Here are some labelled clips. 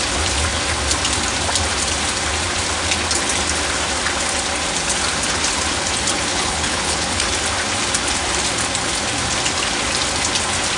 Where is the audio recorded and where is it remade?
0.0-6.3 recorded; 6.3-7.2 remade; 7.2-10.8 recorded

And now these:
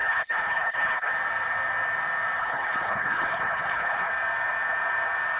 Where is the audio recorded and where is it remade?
0.0-1.1 remade; 1.1-2.4 recorded; 2.4-4.1 remade; 4.1-5.4 recorded